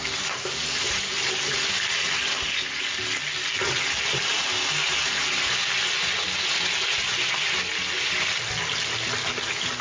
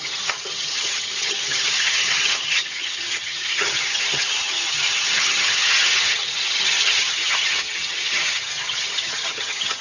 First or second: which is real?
first